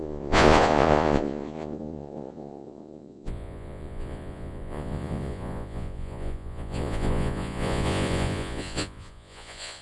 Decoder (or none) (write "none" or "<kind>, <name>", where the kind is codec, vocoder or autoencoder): vocoder, Vocos